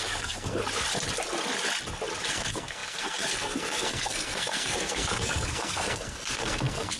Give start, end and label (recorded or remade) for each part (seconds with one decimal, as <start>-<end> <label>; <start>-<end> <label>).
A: 0.0-0.6 remade; 0.6-2.3 recorded; 2.3-7.0 remade